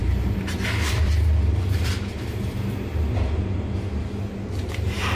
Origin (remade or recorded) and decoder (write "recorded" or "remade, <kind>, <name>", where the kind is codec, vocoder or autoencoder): remade, vocoder, BigVGAN v2